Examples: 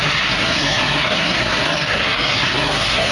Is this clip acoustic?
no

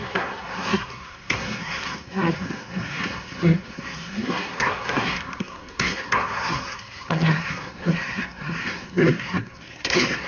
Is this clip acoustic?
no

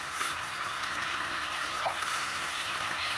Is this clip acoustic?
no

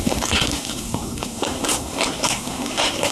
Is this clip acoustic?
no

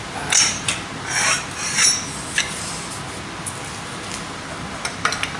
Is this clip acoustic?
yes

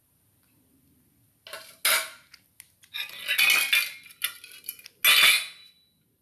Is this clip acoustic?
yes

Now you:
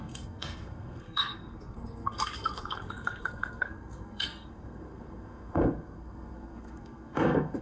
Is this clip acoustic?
no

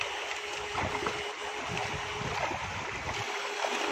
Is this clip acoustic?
yes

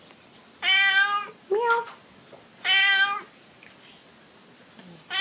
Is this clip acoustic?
yes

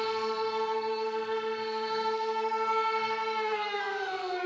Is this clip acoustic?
no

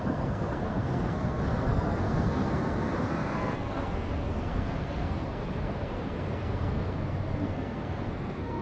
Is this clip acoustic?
no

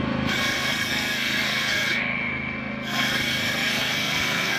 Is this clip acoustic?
no